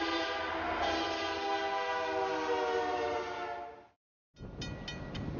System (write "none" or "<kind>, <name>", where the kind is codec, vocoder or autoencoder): none